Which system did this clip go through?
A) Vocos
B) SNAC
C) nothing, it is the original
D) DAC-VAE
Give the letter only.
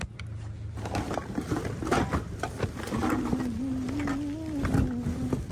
C